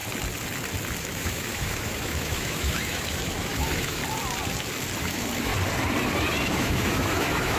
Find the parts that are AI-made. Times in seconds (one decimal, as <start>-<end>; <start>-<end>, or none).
1.0-4.0; 5.0-5.5; 6.5-7.6